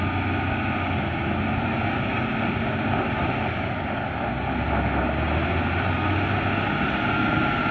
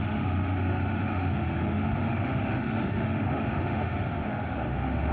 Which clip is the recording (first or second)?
first